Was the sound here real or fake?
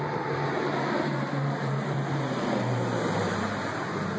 fake